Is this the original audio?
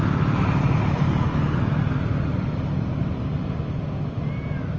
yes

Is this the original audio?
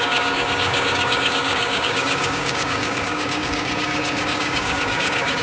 no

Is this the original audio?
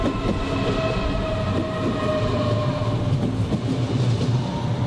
yes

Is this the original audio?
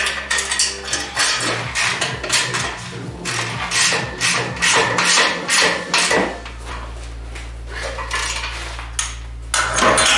yes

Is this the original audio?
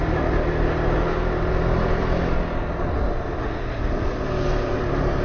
yes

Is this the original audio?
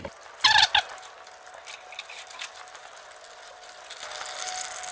yes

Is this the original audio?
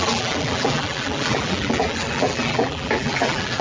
no